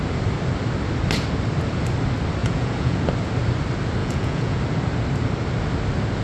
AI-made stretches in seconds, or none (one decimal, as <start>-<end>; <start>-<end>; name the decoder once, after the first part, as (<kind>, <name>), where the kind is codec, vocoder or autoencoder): 2.4-3.0 (vocoder, Vocos); 4.0-4.6